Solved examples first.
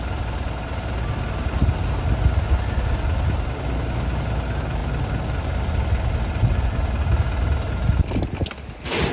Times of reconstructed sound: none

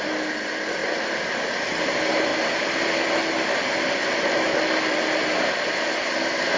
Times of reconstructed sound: none

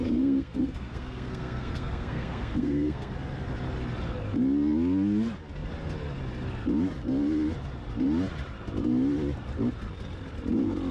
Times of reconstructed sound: 0.0-3.1 (codec, SNAC)

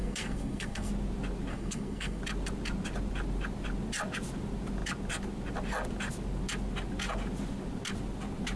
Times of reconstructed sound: 0.0-0.9 (codec, SNAC); 1.5-2.2

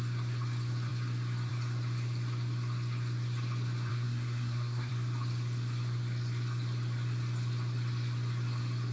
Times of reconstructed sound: 3.9-4.9 (codec, SNAC)

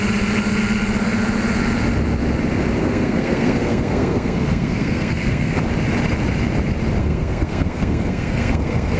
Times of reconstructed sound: 2.8-5.6 (codec, SNAC); 7.0-9.0

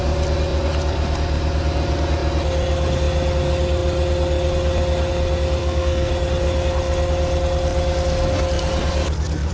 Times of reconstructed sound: 5.6-6.1 (codec, SNAC)

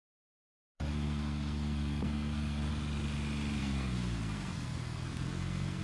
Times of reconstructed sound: 0.0-2.7 (codec, SNAC); 3.6-5.8